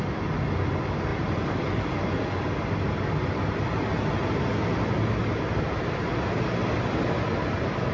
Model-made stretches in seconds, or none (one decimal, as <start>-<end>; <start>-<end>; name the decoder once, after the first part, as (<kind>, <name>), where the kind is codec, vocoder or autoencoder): 1.1-1.8 (vocoder, BigVGAN v2)